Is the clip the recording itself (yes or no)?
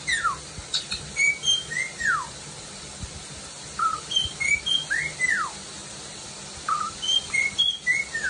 yes